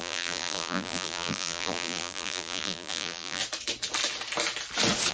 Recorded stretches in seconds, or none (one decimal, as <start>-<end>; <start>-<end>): 3.4-5.1